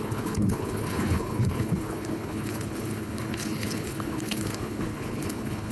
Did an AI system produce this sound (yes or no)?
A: yes